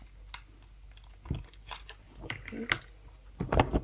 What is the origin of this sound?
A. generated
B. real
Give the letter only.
B